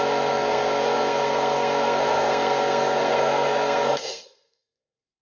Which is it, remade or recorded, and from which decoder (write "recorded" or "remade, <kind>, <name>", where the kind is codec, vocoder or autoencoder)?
remade, codec, SNAC